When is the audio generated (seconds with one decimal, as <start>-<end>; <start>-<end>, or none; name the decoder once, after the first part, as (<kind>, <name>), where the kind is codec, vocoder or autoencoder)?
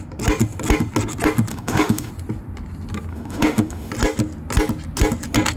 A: 1.5-2.1 (autoencoder, DAC-VAE); 3.1-3.9